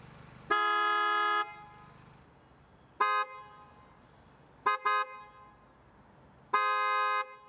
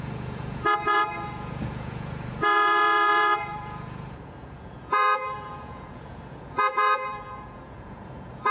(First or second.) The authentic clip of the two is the first